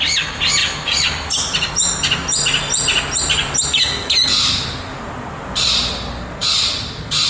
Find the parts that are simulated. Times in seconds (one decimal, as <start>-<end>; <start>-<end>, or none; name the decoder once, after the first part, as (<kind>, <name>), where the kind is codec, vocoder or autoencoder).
0.6-1.7 (vocoder, BigVGAN v2); 6.4-7.3